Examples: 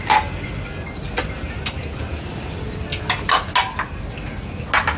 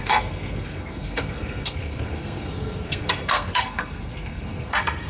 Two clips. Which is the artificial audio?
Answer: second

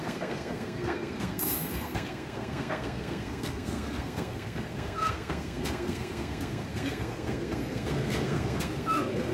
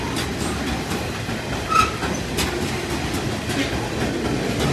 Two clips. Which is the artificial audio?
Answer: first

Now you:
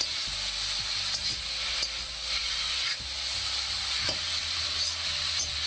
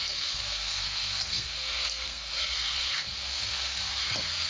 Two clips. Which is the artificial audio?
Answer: second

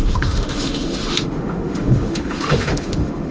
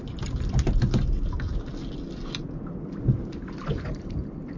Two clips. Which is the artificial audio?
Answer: first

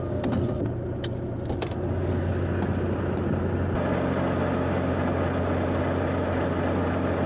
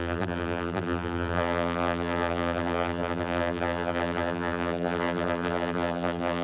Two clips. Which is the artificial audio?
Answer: second